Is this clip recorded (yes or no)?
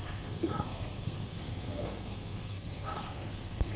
no